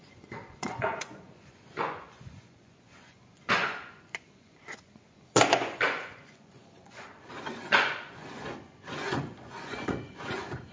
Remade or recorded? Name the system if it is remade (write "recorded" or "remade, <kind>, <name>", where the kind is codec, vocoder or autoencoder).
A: remade, vocoder, Vocos